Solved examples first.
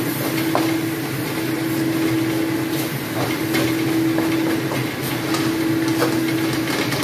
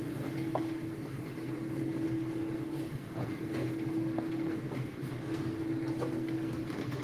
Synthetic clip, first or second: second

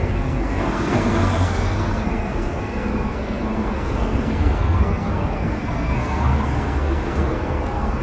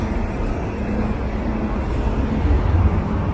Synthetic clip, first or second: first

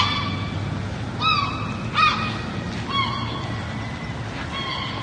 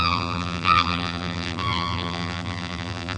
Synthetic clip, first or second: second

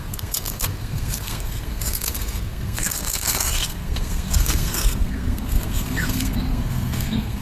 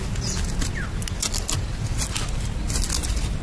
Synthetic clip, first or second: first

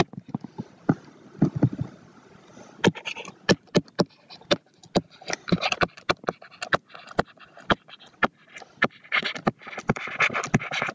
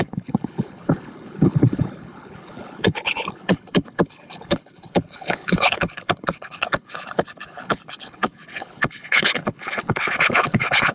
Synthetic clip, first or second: second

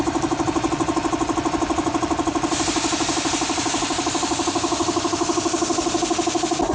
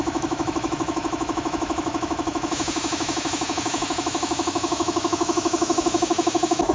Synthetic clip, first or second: second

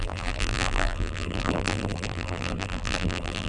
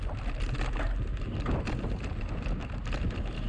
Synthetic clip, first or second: first